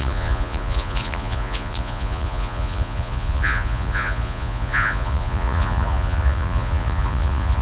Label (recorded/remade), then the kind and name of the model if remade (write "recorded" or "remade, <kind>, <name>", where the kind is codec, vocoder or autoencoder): remade, vocoder, Vocos